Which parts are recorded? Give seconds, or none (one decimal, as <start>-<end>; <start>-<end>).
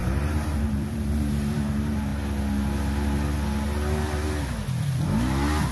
2.1-5.7